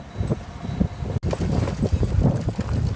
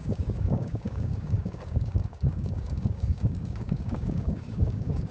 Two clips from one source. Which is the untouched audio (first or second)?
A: first